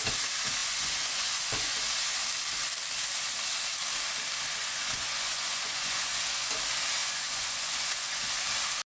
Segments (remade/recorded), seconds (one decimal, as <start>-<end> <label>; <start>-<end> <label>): 0.0-0.6 recorded; 0.6-1.8 remade; 1.8-4.6 recorded; 4.6-6.5 remade; 6.5-7.0 recorded; 7.0-8.3 remade; 8.3-8.9 recorded